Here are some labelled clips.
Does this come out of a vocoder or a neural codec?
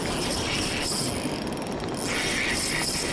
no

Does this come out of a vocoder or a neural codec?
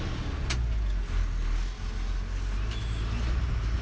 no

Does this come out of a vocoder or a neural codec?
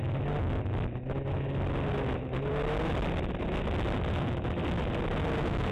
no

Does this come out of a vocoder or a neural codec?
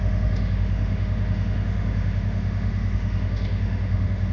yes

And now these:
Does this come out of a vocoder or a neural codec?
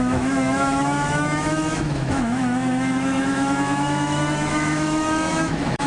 yes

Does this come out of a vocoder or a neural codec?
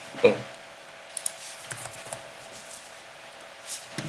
no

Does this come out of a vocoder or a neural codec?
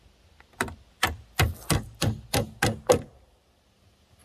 no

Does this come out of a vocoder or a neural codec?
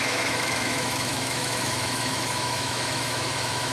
yes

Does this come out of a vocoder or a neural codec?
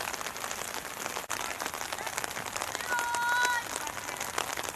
no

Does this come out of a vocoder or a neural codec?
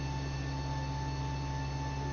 no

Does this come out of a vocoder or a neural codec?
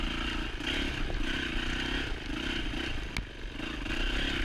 no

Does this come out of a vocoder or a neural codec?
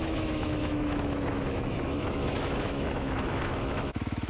yes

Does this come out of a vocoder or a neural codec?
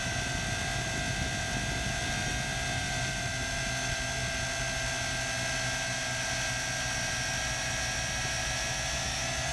no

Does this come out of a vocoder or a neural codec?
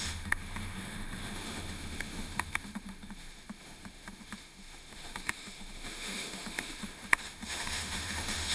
yes